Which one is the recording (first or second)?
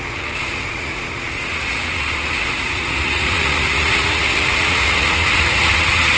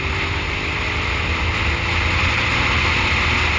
second